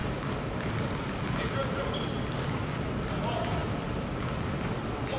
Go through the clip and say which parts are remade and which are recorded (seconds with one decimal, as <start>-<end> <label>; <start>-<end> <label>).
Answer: 0.0-1.2 remade; 1.2-5.2 recorded